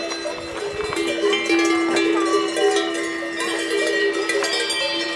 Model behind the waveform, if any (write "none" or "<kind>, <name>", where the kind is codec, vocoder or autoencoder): none